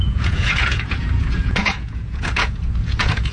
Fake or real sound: fake